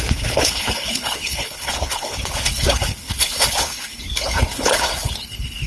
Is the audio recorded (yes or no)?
no